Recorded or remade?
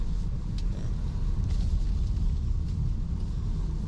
recorded